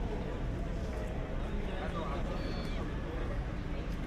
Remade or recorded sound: recorded